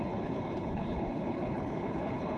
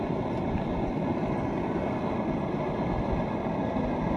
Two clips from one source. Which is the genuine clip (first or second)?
second